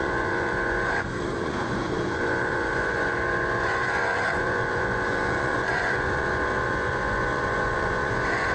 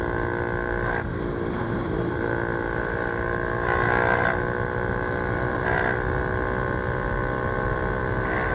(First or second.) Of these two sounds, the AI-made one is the first